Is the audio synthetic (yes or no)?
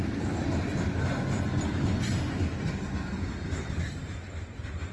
no